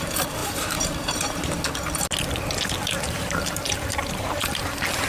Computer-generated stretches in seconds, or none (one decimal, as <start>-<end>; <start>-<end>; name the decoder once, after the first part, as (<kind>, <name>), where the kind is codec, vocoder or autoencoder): 0.4-1.6 (vocoder, BigVGAN v2); 2.8-4.6